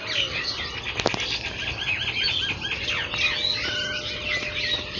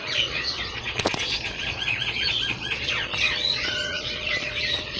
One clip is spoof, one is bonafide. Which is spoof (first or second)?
second